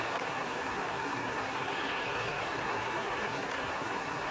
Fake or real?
fake